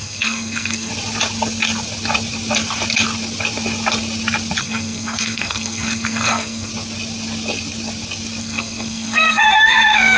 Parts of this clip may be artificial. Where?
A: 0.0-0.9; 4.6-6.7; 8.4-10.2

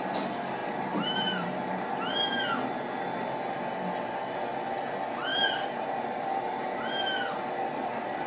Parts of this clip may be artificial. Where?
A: 0.6-1.8; 5.3-8.3

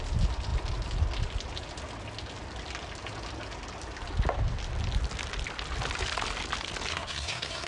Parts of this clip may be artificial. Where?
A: 6.9-7.7